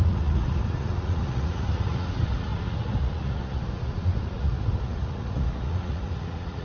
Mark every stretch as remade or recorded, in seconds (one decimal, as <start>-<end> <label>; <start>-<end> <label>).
0.0-6.6 remade